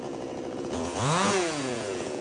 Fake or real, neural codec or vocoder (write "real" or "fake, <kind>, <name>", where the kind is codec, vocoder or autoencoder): fake, vocoder, Vocos